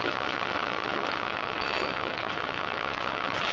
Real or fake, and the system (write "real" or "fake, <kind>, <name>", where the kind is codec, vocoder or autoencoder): fake, vocoder, WaveNeXt